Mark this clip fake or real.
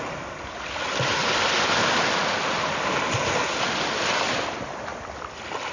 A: real